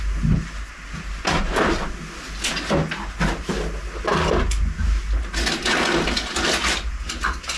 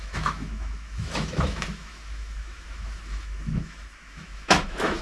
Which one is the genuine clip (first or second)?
first